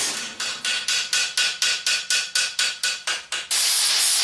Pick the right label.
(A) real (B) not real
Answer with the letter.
A